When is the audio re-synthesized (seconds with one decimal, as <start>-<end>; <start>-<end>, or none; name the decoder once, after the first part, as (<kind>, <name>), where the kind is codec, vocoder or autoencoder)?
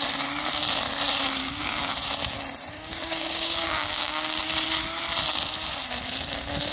1.4-1.9 (codec, DAC); 2.7-4.4